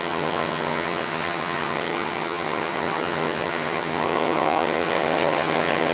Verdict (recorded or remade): remade